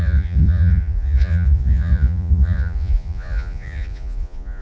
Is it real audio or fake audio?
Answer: fake